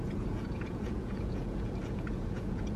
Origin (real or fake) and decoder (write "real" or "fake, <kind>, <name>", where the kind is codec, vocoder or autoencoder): fake, vocoder, Vocos